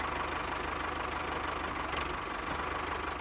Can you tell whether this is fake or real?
real